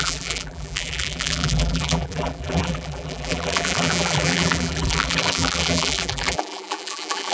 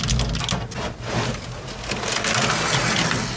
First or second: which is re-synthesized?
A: first